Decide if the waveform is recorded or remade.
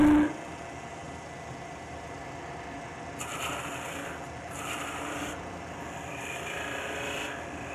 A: recorded